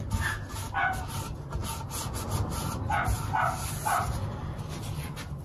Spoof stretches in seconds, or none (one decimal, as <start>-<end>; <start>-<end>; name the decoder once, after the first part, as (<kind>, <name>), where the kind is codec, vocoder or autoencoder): none